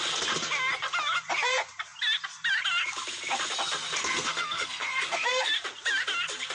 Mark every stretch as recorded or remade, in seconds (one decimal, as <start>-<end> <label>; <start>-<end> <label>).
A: 0.0-4.0 recorded; 4.0-5.5 remade; 5.5-6.5 recorded